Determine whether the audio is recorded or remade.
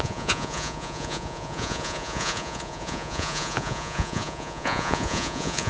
remade